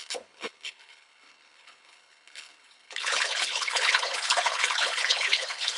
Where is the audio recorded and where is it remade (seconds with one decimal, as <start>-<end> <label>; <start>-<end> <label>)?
0.0-5.8 remade